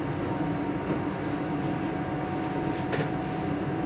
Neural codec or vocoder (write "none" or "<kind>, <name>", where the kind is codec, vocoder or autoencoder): none